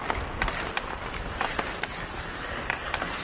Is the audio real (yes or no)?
yes